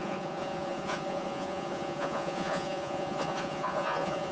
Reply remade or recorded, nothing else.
remade